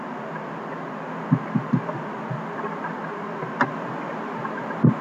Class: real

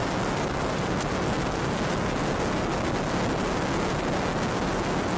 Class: real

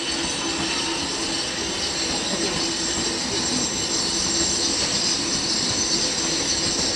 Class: real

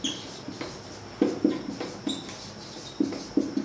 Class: real